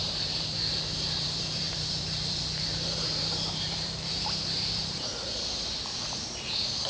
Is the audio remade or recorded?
remade